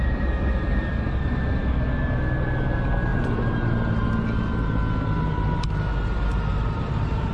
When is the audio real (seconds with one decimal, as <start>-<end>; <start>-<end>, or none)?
0.0-3.1; 4.1-6.5